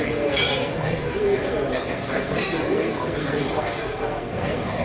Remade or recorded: remade